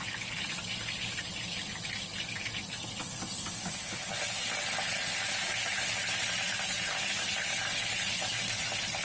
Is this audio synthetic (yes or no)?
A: no